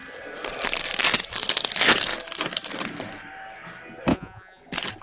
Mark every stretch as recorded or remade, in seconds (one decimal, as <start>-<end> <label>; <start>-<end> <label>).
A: 0.0-4.1 recorded; 4.1-4.6 remade; 4.6-5.0 recorded